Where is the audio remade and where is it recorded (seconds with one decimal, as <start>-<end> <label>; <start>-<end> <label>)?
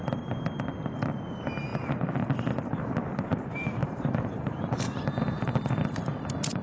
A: 0.0-3.8 recorded; 3.8-6.6 remade